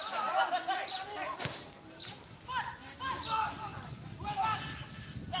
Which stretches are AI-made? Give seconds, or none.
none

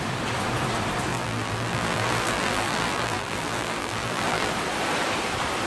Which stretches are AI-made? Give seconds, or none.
1.1-4.5 (vocoder, BigVGAN v2)

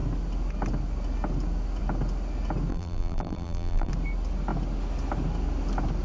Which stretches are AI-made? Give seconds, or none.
2.7-3.9 (vocoder, BigVGAN v2)

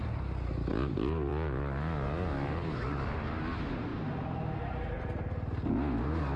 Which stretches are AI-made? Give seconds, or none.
none

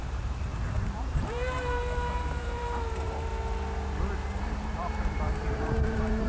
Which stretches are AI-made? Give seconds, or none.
0.0-3.3 (vocoder, BigVGAN v2); 4.4-6.3